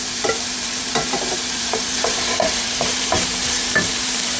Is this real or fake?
fake